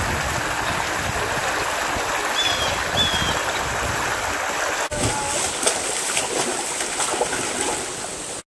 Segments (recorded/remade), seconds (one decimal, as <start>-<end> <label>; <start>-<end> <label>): 0.0-8.5 recorded